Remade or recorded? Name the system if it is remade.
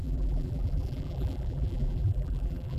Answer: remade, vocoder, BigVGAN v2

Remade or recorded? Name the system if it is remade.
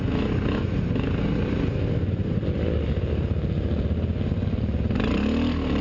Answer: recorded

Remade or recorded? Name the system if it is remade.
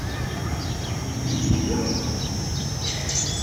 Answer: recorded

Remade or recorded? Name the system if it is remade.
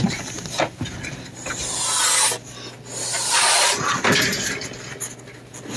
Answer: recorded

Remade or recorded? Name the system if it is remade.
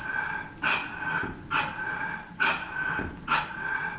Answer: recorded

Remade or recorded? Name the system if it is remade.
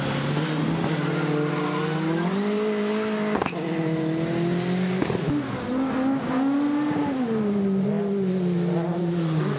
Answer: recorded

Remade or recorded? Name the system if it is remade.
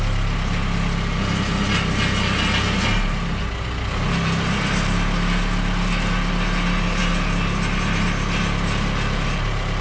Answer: recorded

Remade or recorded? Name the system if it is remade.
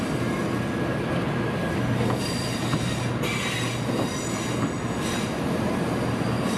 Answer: recorded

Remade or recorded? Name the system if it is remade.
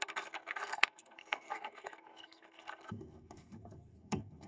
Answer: remade, codec, SNAC